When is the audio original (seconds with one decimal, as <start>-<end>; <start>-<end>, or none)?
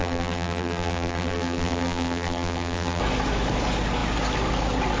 3.0-5.0